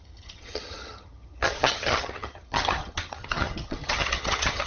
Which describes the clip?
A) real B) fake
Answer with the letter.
B